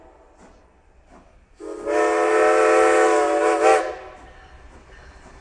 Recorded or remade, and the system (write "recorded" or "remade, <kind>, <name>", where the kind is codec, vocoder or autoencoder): recorded